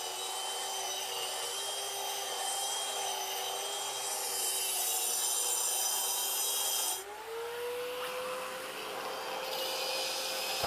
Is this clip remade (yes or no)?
no